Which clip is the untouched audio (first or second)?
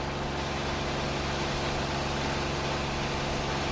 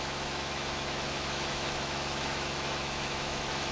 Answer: first